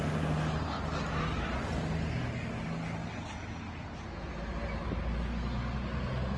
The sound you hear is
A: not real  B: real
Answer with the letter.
B